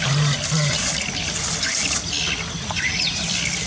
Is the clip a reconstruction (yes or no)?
no